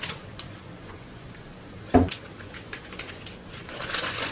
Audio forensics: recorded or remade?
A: remade